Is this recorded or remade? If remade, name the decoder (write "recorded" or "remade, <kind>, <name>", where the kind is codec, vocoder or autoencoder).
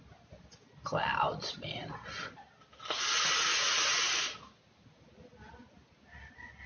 recorded